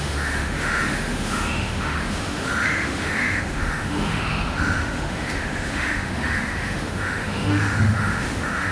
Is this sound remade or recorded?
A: remade